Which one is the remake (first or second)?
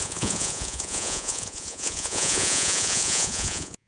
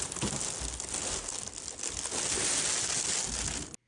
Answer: first